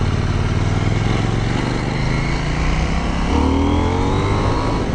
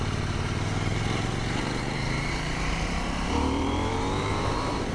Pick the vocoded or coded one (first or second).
second